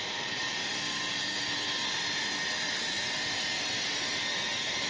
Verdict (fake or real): real